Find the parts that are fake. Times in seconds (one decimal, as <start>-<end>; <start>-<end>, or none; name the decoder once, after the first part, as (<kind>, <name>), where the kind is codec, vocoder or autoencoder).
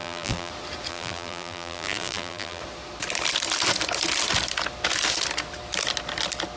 0.0-0.5 (vocoder, BigVGAN v2); 0.9-2.6